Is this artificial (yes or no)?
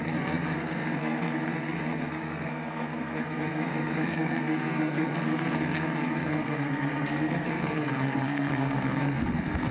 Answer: yes